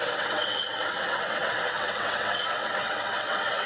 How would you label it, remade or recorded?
remade